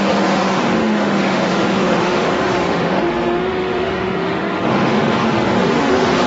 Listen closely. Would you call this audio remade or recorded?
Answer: remade